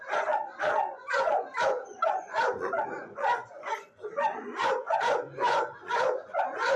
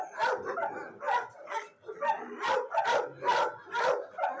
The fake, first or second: first